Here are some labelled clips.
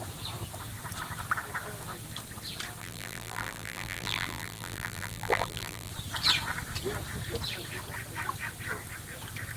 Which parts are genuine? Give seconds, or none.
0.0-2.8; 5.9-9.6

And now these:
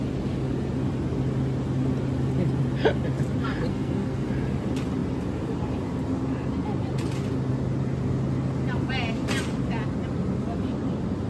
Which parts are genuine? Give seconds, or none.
0.0-3.7; 4.3-11.3

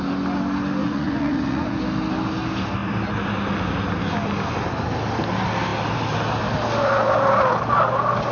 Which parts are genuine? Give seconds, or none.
0.0-0.8; 1.8-8.3